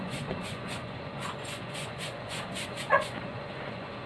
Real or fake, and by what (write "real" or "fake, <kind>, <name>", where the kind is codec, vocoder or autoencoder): fake, vocoder, Vocos